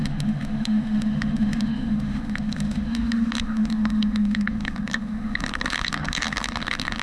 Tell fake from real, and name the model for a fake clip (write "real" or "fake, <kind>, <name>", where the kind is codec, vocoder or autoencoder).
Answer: fake, autoencoder, DAC-VAE